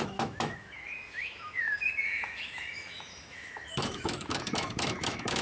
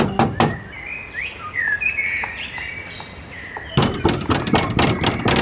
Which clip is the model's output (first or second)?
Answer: first